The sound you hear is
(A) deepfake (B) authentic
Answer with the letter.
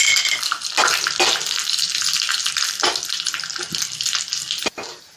B